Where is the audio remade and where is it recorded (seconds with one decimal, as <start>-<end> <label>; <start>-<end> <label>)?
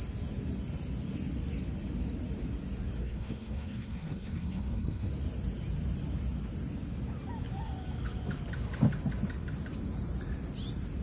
0.0-3.0 recorded; 3.0-5.1 remade; 5.1-11.0 recorded